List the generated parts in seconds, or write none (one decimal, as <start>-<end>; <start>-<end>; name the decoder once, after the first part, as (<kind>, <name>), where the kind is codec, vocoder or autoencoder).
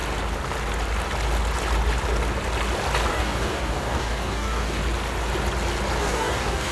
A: 3.1-4.8 (codec, DAC); 6.0-6.7